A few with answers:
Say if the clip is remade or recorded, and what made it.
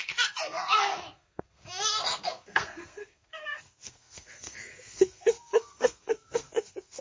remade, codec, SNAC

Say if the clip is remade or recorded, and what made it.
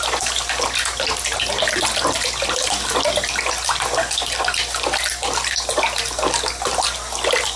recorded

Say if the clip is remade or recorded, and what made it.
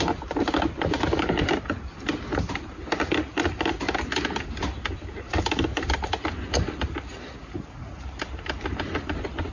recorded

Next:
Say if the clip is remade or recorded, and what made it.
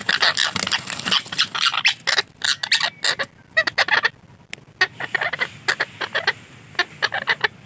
recorded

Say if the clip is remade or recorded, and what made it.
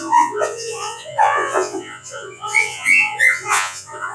remade, vocoder, Vocos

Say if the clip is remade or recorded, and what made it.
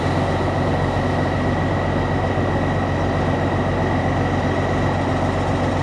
recorded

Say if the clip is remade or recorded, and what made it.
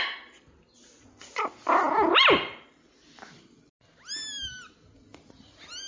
recorded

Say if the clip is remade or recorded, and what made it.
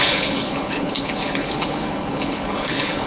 remade, codec, HILCodec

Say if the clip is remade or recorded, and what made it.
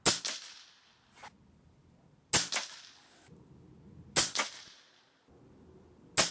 recorded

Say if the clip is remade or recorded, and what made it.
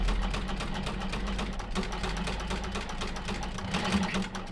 recorded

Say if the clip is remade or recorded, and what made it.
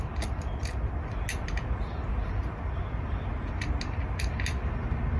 recorded